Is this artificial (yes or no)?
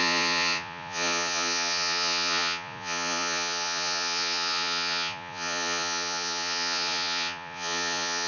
yes